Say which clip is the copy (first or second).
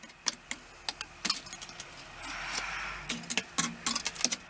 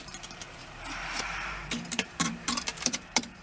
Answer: second